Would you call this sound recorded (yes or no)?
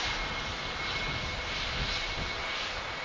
yes